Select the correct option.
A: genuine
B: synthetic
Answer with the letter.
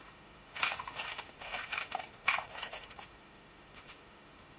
B